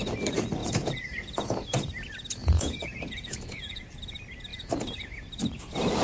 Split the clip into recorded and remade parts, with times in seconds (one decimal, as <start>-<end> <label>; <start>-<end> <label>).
0.0-0.6 recorded; 0.6-1.9 remade; 1.9-2.4 recorded; 2.4-3.9 remade; 3.9-4.5 recorded; 4.5-5.2 remade; 5.2-6.0 recorded